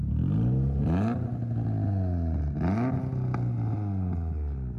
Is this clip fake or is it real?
real